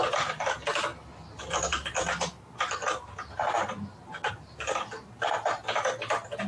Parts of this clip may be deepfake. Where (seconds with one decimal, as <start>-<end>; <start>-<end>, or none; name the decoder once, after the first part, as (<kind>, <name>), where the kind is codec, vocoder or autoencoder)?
none